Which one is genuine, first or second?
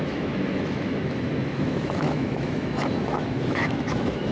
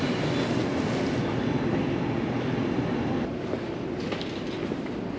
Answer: second